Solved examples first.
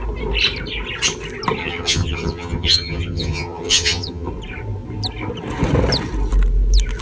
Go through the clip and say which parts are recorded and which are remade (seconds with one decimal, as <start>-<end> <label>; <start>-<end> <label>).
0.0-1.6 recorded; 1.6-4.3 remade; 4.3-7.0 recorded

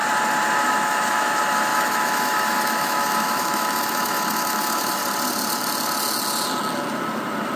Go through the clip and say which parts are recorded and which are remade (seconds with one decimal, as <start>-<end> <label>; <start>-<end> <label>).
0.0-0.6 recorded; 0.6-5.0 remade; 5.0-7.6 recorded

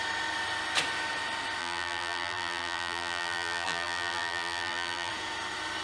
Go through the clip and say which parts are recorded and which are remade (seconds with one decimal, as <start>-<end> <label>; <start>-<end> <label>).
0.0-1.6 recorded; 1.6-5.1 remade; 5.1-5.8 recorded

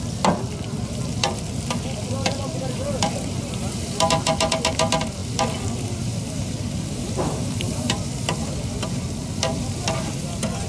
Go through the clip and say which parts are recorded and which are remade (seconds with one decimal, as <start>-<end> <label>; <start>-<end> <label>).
0.0-10.7 remade

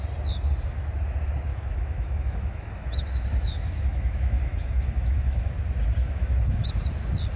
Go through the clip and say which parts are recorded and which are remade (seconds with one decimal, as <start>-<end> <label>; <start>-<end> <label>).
0.0-1.5 recorded; 1.5-5.5 remade; 5.5-6.0 recorded; 6.0-6.7 remade; 6.7-7.4 recorded

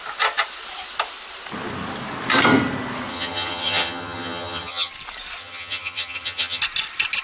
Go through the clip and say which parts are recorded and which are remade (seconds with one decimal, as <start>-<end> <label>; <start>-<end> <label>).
0.0-3.1 recorded; 3.1-4.9 remade; 4.9-5.4 recorded; 5.4-6.6 remade; 6.6-7.2 recorded